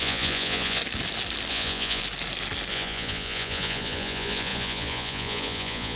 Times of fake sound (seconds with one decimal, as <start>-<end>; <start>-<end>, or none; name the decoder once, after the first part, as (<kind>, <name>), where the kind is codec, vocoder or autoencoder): 0.0-0.8 (vocoder, Vocos); 1.5-2.0; 2.7-6.0